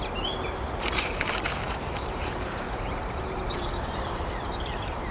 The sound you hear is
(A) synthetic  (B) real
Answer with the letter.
A